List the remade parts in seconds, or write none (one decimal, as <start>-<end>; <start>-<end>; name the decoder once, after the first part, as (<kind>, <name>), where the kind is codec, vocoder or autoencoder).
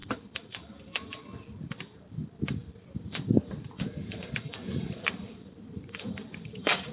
0.0-6.9 (vocoder, BigVGAN v2)